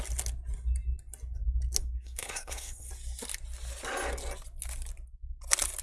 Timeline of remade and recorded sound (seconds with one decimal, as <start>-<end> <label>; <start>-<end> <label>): 0.0-1.8 recorded; 1.8-2.9 remade; 2.9-5.8 recorded